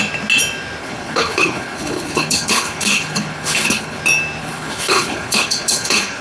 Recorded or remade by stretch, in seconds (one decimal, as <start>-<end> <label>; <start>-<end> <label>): 0.0-0.8 recorded; 0.8-4.0 remade; 4.0-4.4 recorded; 4.4-6.2 remade